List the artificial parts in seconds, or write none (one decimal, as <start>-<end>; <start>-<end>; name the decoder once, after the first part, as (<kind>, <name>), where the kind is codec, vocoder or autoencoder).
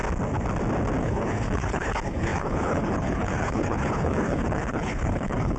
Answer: 1.0-5.6 (codec, HILCodec)